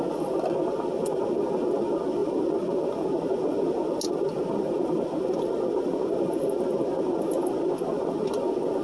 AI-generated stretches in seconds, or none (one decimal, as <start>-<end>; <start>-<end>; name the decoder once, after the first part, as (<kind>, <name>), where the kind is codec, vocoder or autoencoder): none